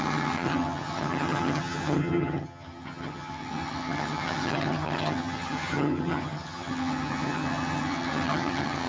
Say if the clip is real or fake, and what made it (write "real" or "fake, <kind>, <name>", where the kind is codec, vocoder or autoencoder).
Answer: fake, vocoder, HiFi-GAN